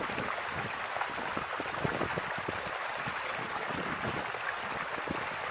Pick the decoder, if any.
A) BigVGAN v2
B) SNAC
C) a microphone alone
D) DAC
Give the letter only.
C